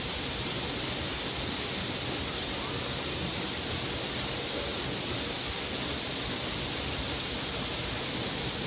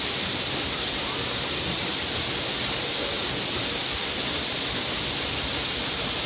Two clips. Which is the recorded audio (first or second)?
first